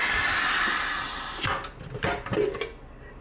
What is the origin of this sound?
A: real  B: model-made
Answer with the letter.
A